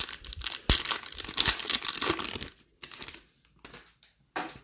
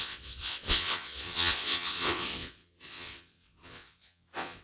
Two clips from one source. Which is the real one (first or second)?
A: first